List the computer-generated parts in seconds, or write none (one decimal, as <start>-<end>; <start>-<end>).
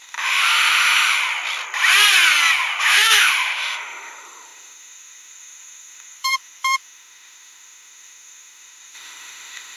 0.0-1.2; 2.8-9.8